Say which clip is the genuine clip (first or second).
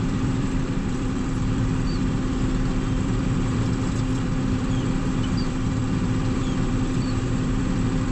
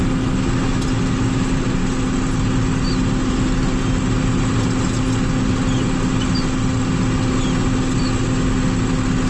second